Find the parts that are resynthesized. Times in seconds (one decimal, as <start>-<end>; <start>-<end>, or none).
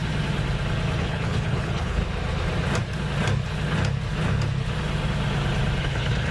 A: 1.0-2.0; 5.8-6.3